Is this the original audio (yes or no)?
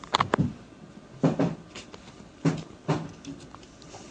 yes